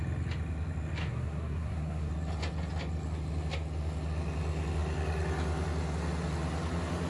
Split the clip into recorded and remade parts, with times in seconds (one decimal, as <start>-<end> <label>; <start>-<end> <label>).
0.0-1.0 recorded; 1.0-2.1 remade; 2.1-7.1 recorded